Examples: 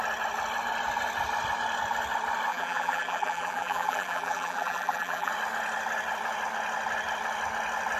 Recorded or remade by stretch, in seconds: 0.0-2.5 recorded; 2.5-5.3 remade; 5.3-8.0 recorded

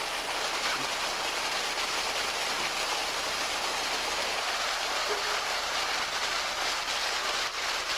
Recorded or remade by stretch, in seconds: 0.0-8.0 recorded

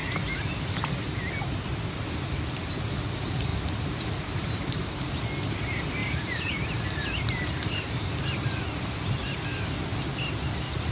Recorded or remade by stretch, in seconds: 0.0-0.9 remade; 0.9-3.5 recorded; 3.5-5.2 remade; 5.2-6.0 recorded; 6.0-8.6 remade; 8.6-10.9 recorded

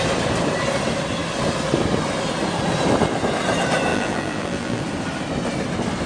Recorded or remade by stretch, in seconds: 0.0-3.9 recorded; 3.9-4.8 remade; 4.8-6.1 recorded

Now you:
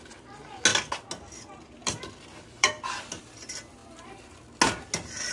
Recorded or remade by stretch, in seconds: 0.0-1.8 recorded; 1.8-2.7 remade; 2.7-5.3 recorded

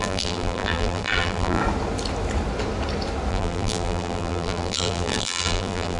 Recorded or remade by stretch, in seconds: 0.0-1.6 remade; 1.6-3.3 recorded; 3.3-6.0 remade